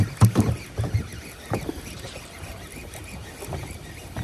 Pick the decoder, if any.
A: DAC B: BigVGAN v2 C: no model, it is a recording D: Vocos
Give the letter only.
C